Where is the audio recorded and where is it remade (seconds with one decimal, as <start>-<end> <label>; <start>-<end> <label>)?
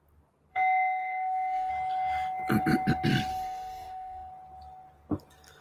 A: 0.0-0.5 recorded; 0.5-1.7 remade; 1.7-3.3 recorded; 3.3-4.3 remade; 4.3-5.6 recorded